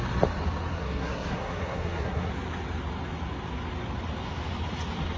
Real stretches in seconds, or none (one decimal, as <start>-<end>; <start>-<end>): 0.0-0.7; 2.3-5.2